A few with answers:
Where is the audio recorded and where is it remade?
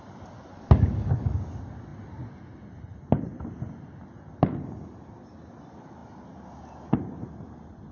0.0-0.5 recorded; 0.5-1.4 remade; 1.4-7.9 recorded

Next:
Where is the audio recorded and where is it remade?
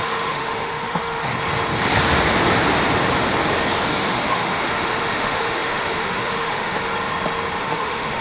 0.0-1.3 remade; 1.3-4.1 recorded; 4.1-6.8 remade; 6.8-7.6 recorded; 7.6-8.2 remade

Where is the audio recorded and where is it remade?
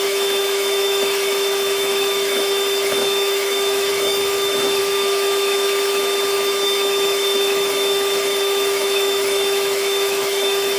0.0-10.8 remade